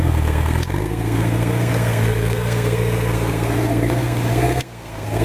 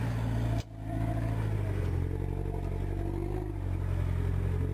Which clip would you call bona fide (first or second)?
second